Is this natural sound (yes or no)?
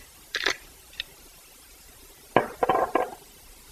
yes